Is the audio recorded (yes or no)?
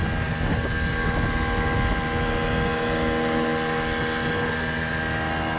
yes